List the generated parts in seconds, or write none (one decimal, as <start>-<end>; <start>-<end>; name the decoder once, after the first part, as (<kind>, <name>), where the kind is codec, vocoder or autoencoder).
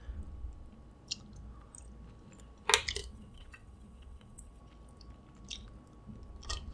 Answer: 3.0-4.6 (vocoder, WaveNeXt)